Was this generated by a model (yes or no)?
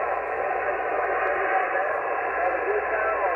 no